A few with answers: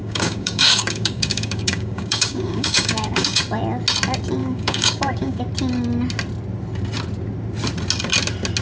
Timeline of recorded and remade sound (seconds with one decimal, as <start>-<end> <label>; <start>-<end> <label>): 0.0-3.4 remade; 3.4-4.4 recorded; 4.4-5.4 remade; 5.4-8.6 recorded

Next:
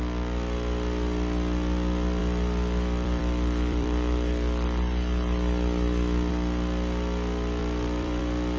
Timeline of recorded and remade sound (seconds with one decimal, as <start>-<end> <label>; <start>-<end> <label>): 0.0-2.2 recorded; 2.2-6.3 remade; 6.3-7.6 recorded; 7.6-8.2 remade; 8.2-8.6 recorded

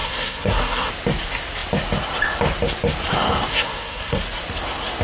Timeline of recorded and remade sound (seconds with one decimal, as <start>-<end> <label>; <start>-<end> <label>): 0.0-0.9 remade; 0.9-3.5 recorded; 3.5-4.2 remade; 4.2-5.0 recorded

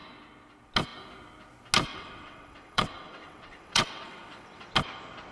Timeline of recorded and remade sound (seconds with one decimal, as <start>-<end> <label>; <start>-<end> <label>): 0.0-1.9 recorded; 1.9-4.7 remade; 4.7-5.3 recorded

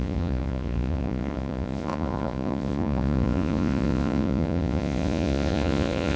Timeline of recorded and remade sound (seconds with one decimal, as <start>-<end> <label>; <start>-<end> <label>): 0.0-6.2 remade

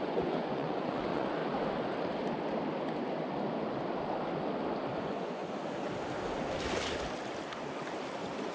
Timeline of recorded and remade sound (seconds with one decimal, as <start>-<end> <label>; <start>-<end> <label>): 0.0-1.4 remade; 1.4-5.0 recorded; 5.0-5.4 remade; 5.4-8.5 recorded